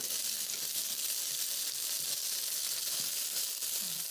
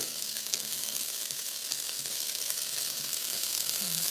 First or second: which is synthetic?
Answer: second